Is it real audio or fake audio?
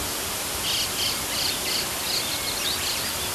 real